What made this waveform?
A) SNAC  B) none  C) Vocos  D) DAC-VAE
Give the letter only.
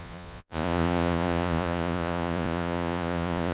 C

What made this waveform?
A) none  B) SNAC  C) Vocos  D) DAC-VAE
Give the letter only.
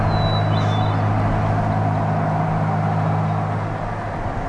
A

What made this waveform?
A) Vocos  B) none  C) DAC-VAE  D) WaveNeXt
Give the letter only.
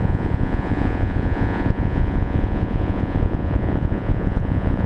A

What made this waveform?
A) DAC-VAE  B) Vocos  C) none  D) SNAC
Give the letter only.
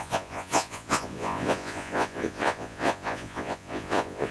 B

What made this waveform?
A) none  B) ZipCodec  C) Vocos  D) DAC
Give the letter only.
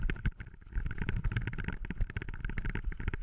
A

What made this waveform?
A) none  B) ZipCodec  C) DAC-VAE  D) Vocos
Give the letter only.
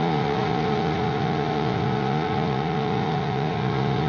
D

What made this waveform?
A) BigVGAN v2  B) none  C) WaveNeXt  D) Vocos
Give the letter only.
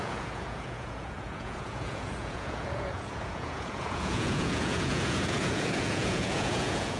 D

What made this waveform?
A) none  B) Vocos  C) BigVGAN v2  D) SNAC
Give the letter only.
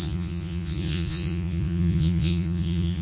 B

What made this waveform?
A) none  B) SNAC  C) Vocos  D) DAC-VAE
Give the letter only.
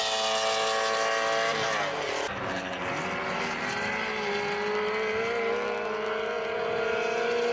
A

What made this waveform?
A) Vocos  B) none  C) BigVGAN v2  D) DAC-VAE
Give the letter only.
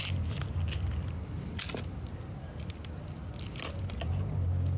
B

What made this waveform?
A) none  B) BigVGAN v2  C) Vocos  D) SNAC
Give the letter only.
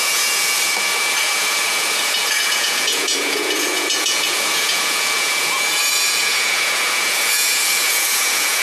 C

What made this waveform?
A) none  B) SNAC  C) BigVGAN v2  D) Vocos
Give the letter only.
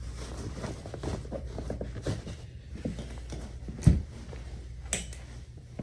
A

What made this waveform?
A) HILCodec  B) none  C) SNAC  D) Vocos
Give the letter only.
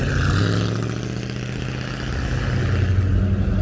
B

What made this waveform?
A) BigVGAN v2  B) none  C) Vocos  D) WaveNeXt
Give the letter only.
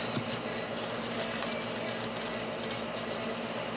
B